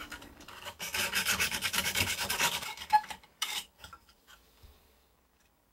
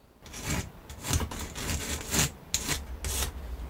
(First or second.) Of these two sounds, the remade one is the first